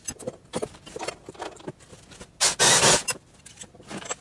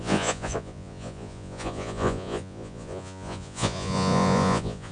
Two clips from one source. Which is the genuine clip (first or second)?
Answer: first